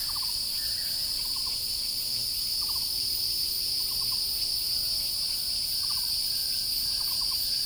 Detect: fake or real fake